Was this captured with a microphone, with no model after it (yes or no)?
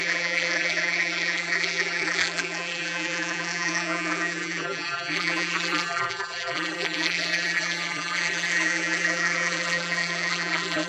no